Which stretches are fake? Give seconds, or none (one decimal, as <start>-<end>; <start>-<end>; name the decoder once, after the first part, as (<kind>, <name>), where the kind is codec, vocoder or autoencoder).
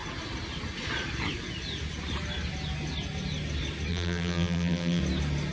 3.9-5.0 (vocoder, BigVGAN v2)